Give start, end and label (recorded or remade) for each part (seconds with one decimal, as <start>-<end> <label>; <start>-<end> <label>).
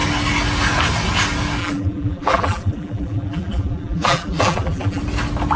0.0-1.6 recorded; 1.6-5.0 remade; 5.0-5.6 recorded